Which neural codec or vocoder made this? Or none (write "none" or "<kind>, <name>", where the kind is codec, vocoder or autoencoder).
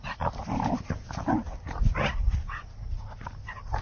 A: none